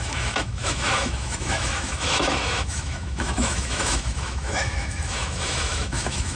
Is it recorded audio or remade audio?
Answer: remade